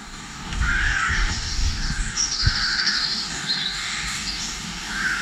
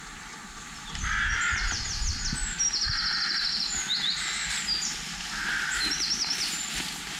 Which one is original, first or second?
second